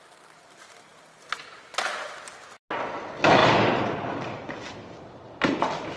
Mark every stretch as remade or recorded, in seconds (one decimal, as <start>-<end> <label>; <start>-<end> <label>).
0.0-6.0 recorded

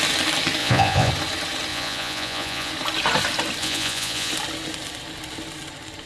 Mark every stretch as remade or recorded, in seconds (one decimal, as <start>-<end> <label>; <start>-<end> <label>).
0.0-0.6 recorded; 0.6-1.1 remade; 1.1-1.7 recorded; 1.7-2.7 remade; 2.7-3.6 recorded; 3.6-4.3 remade; 4.3-6.1 recorded

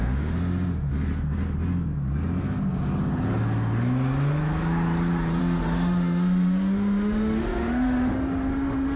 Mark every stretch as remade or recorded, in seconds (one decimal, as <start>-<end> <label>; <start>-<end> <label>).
0.0-0.9 remade; 0.9-5.4 recorded; 5.4-9.0 remade